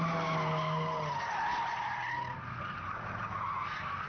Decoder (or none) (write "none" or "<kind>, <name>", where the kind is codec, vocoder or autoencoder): none